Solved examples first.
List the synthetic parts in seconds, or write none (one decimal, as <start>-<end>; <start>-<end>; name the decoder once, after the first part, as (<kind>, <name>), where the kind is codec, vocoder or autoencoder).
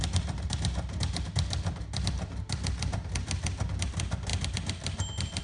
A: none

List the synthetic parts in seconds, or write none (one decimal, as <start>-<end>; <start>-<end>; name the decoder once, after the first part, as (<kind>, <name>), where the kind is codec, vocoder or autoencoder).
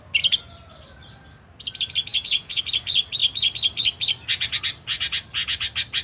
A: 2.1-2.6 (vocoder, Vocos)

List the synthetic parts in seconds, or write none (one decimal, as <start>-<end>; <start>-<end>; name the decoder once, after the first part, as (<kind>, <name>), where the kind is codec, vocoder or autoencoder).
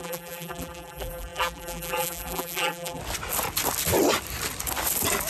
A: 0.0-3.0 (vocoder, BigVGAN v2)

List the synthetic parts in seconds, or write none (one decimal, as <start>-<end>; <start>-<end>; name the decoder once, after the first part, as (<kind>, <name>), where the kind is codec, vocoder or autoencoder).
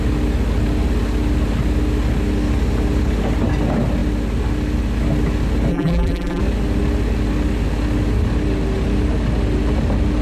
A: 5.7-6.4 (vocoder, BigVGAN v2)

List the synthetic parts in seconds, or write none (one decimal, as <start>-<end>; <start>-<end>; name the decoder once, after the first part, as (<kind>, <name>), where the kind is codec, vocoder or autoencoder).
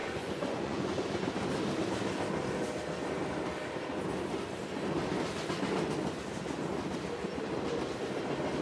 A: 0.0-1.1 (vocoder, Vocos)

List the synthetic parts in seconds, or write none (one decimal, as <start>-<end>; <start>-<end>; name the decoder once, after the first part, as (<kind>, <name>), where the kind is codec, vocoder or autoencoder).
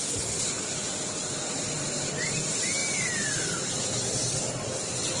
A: none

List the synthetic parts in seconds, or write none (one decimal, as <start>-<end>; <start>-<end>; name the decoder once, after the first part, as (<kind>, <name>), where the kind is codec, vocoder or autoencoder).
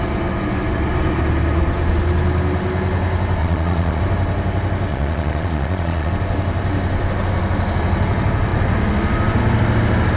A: 3.4-4.0 (vocoder, Vocos); 4.9-6.1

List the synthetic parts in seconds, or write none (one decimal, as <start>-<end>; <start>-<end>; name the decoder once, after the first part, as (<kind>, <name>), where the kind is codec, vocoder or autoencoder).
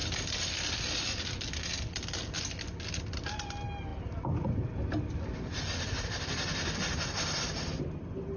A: 0.0-1.5 (vocoder, BigVGAN v2); 3.9-7.8